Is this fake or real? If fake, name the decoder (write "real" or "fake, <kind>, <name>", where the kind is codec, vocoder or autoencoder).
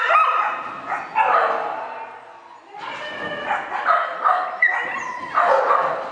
real